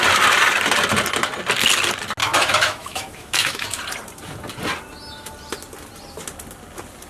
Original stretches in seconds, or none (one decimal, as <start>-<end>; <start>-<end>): 0.0-2.2; 3.8-7.1